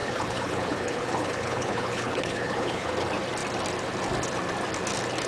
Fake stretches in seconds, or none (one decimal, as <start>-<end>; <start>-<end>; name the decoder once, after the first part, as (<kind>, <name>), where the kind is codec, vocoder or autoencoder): 0.0-2.9 (codec, HILCodec)